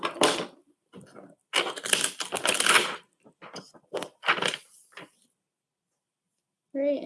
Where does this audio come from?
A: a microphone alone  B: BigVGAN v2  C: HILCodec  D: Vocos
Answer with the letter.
A